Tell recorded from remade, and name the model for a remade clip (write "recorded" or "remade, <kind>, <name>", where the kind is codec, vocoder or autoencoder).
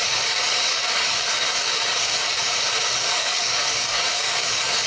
remade, codec, DAC